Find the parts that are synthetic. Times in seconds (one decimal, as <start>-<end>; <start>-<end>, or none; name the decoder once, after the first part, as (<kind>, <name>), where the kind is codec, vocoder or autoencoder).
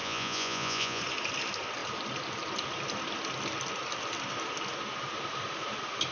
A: 0.0-1.0 (vocoder, Vocos)